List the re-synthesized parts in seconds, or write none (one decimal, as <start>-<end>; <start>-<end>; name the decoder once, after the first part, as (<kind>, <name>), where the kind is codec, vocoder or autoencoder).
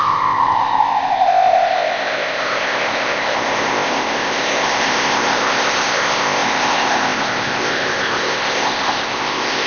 0.0-9.7 (codec, ZipCodec)